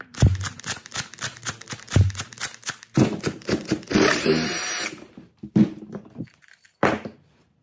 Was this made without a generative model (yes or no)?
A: no